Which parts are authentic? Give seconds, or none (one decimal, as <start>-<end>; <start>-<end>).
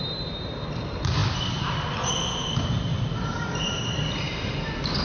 0.0-2.9